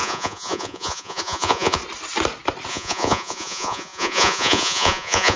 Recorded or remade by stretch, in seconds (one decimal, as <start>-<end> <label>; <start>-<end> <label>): 0.0-1.8 remade; 1.8-2.7 recorded; 2.7-5.4 remade